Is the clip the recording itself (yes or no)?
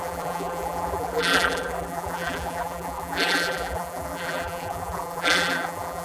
no